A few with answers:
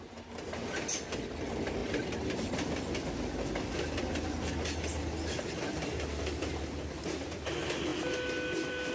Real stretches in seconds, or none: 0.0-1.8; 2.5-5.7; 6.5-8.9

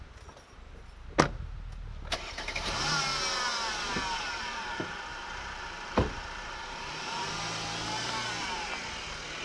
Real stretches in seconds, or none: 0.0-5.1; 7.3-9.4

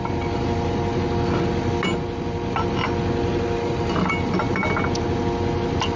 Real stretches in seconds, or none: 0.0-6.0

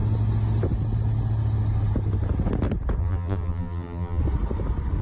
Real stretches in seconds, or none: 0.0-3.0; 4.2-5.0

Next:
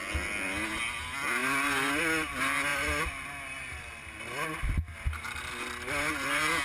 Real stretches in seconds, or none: 0.0-6.6

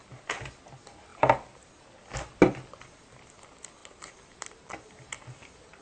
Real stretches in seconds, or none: 0.0-1.1; 1.7-3.8